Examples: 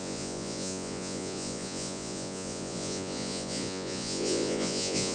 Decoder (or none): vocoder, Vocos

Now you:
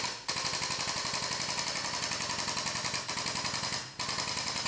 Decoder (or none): none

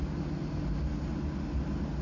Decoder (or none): none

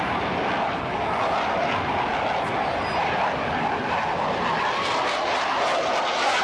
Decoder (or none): none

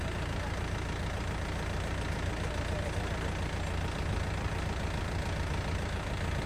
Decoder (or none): none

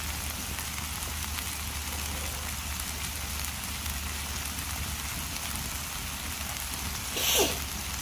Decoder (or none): none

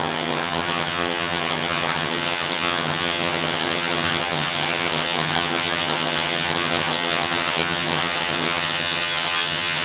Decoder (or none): vocoder, HiFi-GAN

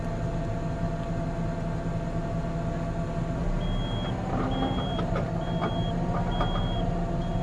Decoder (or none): none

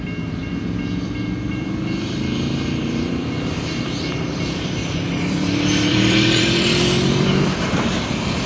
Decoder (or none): vocoder, BigVGAN v2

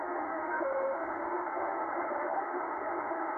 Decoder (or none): autoencoder, DAC-VAE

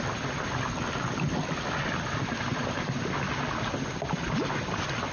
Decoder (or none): none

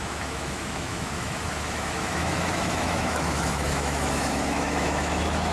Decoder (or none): autoencoder, DAC-VAE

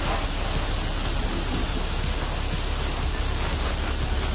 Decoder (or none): none